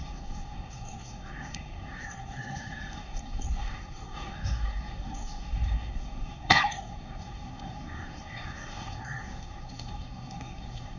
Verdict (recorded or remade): remade